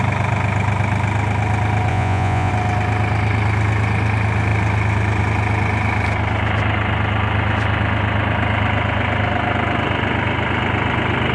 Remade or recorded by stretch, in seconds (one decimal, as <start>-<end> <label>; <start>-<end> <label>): 0.0-1.9 recorded; 1.9-2.5 remade; 2.5-11.3 recorded